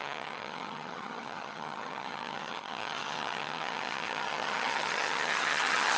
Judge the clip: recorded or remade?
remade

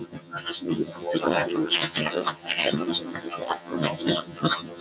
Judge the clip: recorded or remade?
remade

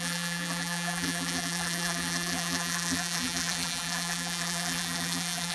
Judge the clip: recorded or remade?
remade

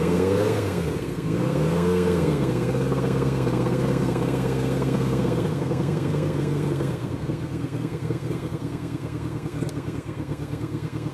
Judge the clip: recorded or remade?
remade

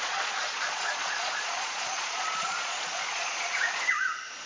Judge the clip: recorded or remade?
remade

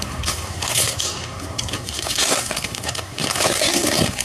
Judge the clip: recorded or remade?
remade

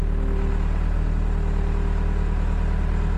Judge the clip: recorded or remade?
recorded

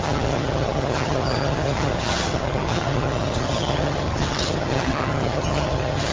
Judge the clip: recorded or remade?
remade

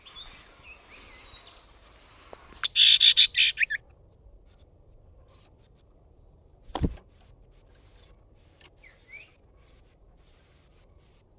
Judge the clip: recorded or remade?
recorded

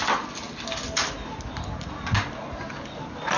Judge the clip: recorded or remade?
recorded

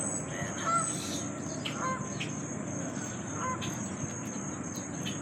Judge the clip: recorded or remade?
recorded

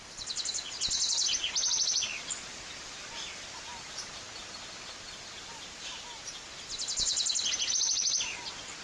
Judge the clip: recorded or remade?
recorded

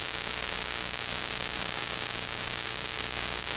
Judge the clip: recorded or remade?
remade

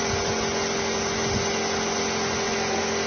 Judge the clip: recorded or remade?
recorded